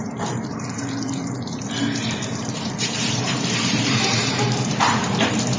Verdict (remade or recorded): remade